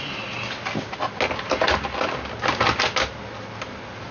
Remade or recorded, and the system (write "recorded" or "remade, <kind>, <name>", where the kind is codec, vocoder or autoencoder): recorded